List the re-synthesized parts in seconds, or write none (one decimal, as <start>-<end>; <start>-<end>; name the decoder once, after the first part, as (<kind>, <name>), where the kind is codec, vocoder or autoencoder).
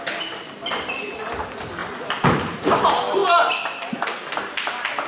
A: none